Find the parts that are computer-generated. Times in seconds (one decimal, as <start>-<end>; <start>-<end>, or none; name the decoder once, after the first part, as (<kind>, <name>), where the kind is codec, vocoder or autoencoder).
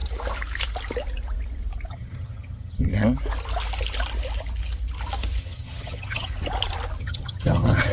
1.9-2.9 (vocoder, HiFi-GAN); 5.4-6.3; 7.0-7.9